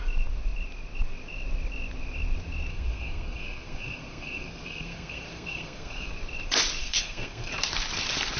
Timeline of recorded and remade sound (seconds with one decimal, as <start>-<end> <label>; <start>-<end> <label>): 0.0-2.7 recorded; 2.7-6.1 remade; 6.1-6.8 recorded; 6.8-7.5 remade; 7.5-8.4 recorded